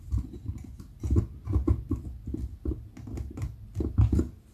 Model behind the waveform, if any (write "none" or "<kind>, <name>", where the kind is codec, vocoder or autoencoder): none